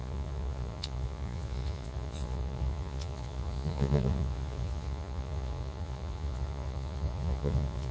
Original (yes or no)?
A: no